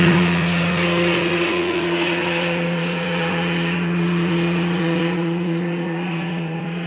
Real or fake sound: fake